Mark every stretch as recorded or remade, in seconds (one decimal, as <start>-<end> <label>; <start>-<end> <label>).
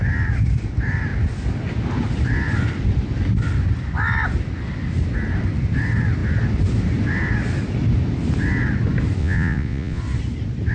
0.0-9.2 recorded; 9.2-10.0 remade; 10.0-10.7 recorded